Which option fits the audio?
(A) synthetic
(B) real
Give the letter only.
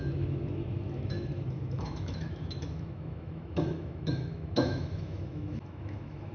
A